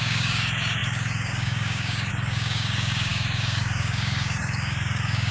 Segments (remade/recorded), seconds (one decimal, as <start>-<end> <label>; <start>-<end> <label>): 0.0-5.3 remade